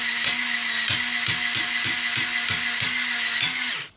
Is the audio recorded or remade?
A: recorded